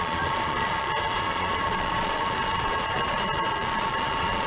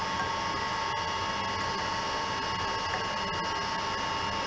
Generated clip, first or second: first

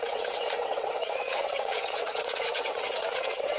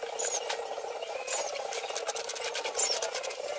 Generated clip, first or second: first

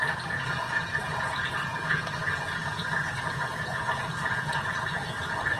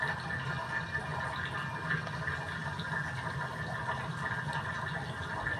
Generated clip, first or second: first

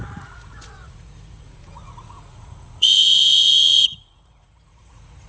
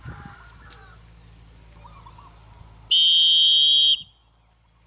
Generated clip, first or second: first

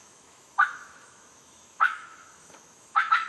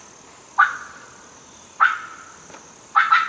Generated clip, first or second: first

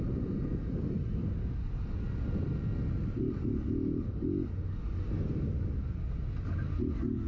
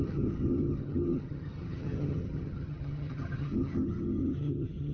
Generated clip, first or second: second